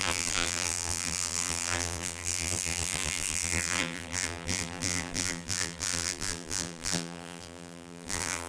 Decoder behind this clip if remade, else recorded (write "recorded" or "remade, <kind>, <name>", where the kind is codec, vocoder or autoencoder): remade, vocoder, BigVGAN v2